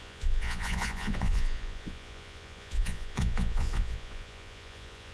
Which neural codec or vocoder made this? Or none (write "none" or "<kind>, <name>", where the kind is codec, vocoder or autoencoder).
vocoder, Vocos